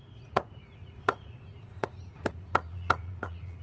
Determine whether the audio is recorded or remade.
remade